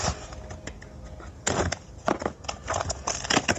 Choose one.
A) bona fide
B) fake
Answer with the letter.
A